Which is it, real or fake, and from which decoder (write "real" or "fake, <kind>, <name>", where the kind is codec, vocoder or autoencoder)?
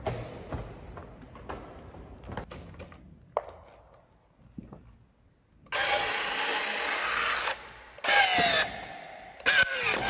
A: real